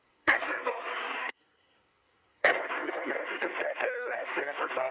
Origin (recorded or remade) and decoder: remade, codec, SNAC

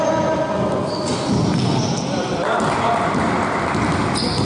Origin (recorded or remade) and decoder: recorded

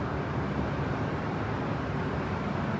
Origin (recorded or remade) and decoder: recorded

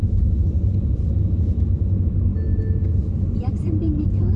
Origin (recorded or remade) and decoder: recorded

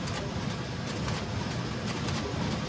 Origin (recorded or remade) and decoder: recorded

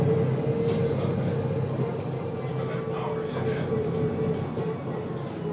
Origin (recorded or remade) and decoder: recorded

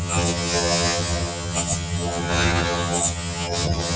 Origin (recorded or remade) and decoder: remade, vocoder, HiFi-GAN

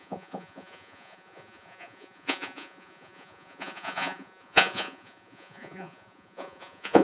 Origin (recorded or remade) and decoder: remade, vocoder, Vocos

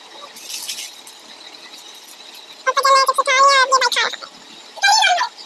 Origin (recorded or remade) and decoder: recorded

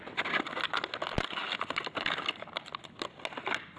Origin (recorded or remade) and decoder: recorded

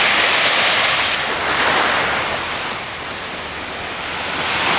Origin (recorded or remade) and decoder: recorded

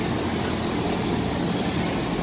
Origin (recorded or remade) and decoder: recorded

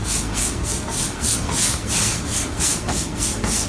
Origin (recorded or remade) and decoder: remade, codec, SNAC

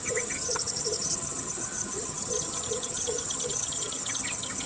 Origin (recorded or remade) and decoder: remade, vocoder, HiFi-GAN